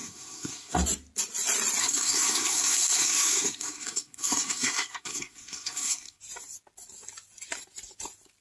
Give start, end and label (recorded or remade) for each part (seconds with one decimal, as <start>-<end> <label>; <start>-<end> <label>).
0.0-0.7 remade; 0.7-1.8 recorded; 1.8-6.2 remade; 6.2-8.4 recorded